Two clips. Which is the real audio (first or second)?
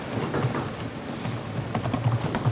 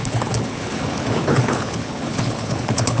first